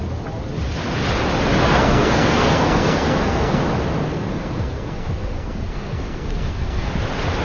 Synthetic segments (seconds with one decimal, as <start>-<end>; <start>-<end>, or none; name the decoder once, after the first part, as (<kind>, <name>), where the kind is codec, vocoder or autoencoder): 1.6-3.6 (codec, SNAC); 4.1-6.9